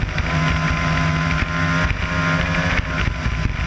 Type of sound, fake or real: real